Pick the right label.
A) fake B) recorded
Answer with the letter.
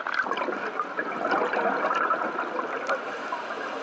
B